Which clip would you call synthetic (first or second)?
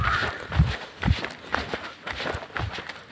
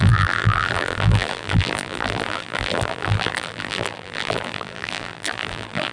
second